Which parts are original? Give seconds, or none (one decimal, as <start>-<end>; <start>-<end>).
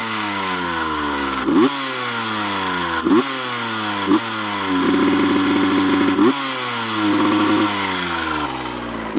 1.4-9.2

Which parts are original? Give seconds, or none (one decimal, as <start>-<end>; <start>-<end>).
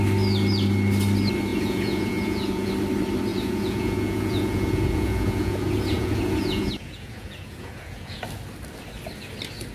0.0-1.5; 2.7-3.3; 8.2-9.7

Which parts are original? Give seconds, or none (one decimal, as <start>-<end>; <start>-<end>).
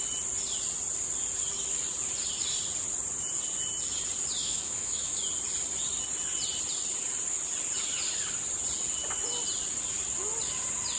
0.0-4.4; 5.2-11.0